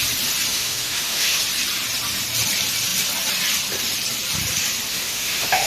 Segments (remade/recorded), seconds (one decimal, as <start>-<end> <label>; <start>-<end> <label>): 0.0-0.5 recorded; 0.5-1.4 remade; 1.4-4.9 recorded; 4.9-5.7 remade